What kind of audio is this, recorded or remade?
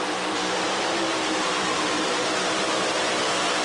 remade